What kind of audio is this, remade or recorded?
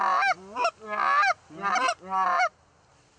recorded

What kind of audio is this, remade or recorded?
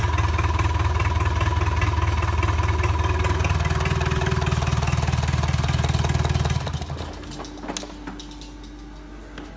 recorded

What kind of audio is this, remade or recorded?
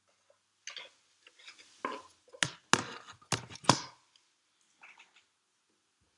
recorded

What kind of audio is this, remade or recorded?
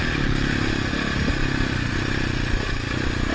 recorded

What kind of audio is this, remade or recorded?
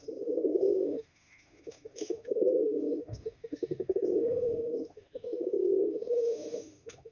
remade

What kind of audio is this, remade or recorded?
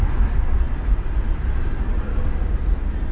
recorded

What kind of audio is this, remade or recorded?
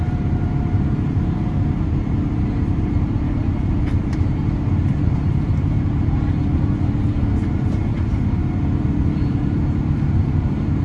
remade